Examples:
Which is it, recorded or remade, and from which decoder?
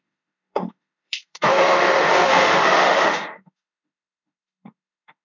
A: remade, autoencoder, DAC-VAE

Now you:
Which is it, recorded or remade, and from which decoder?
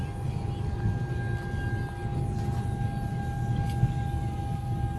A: recorded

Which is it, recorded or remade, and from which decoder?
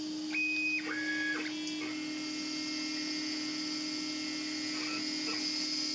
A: recorded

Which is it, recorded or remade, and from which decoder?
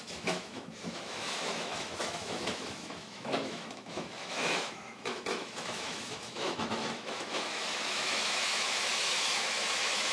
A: remade, autoencoder, DAC-VAE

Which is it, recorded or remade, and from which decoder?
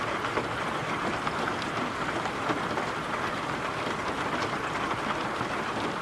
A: remade, vocoder, BigVGAN v2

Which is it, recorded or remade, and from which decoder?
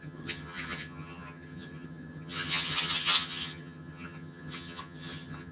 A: remade, vocoder, HiFi-GAN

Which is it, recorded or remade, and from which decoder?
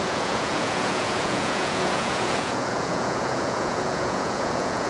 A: remade, vocoder, Vocos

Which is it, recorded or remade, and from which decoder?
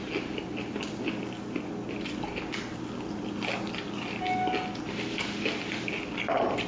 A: recorded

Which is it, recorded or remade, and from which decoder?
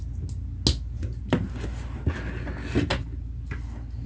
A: recorded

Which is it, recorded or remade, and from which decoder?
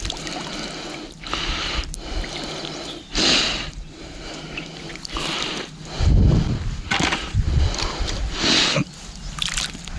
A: recorded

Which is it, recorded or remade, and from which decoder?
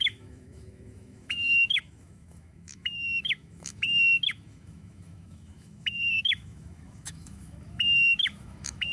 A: remade, autoencoder, DAC-VAE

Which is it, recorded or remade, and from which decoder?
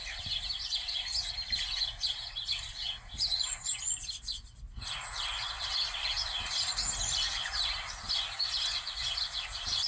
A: recorded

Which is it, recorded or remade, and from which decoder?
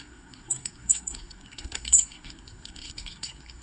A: remade, codec, SNAC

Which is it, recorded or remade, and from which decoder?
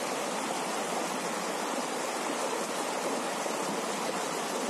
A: recorded